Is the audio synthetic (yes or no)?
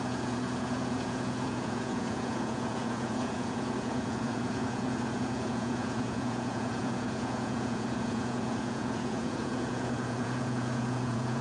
yes